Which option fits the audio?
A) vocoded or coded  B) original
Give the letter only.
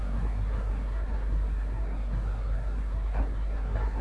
A